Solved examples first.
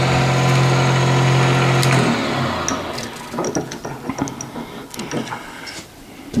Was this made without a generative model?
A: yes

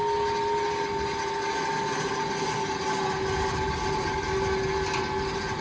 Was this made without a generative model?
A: yes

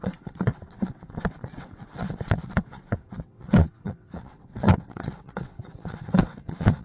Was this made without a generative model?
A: no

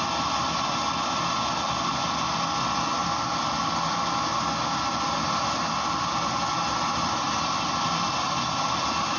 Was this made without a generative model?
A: yes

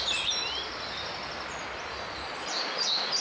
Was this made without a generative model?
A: yes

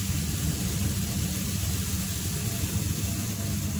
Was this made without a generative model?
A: yes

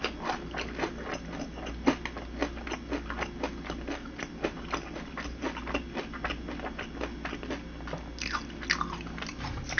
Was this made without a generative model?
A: yes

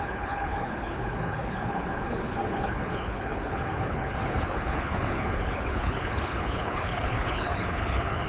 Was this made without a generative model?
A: no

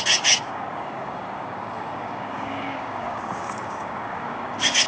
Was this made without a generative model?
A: no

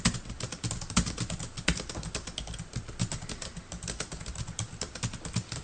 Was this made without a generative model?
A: yes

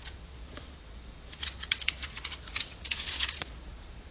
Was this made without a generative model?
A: no